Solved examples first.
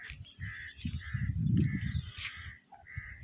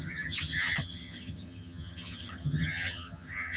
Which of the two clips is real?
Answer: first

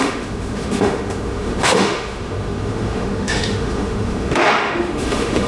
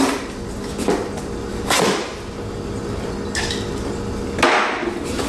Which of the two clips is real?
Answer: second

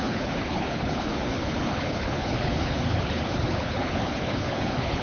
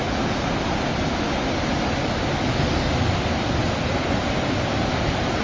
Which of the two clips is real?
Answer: second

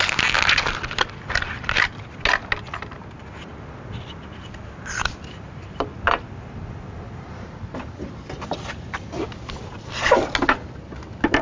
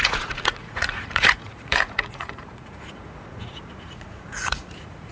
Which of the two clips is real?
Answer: first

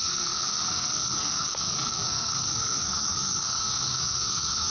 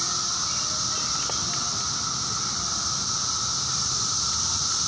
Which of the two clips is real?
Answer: second